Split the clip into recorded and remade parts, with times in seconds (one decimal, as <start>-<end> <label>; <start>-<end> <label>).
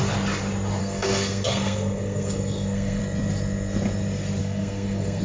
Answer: 0.0-0.8 recorded; 0.8-3.0 remade; 3.0-4.4 recorded; 4.4-5.2 remade